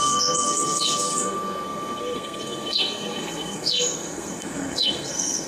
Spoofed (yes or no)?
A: yes